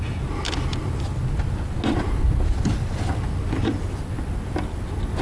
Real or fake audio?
real